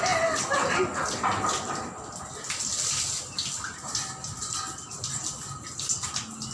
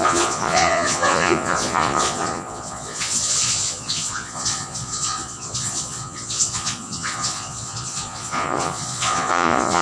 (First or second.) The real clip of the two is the first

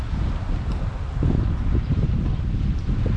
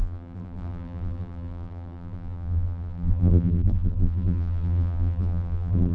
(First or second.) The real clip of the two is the first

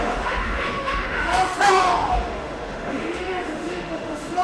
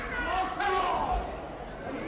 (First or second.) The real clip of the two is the second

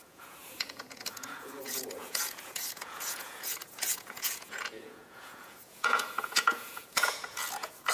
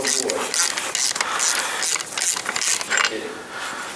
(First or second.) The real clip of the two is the second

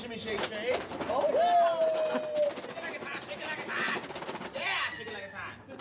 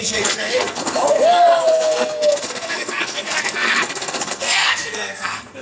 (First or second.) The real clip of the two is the first